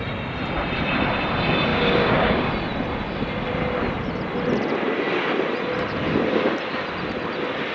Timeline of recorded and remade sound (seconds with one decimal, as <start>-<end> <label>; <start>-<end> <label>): 0.0-1.7 recorded; 1.7-2.5 remade; 2.5-7.7 recorded